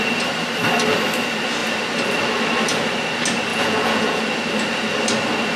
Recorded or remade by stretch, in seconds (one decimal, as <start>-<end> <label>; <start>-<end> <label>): 0.0-3.5 recorded; 3.5-4.2 remade; 4.2-5.6 recorded